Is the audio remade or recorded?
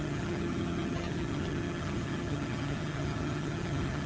remade